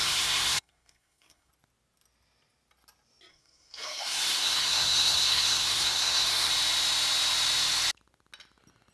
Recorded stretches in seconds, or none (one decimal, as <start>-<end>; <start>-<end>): 1.5-3.3; 6.5-8.9